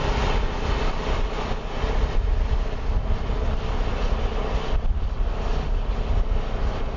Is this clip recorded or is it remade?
recorded